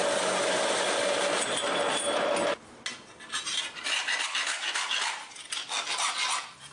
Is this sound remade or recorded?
recorded